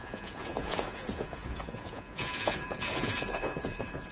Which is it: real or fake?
fake